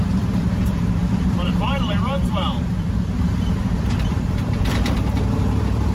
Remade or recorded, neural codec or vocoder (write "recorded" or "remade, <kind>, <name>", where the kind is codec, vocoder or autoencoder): remade, vocoder, BigVGAN v2